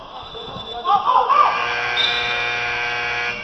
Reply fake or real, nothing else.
fake